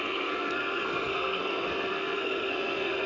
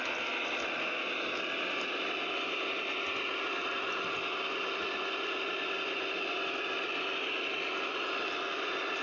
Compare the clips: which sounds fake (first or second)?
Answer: first